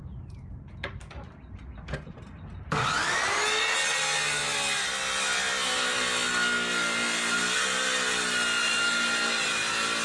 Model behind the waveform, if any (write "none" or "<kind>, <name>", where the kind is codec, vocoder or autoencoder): none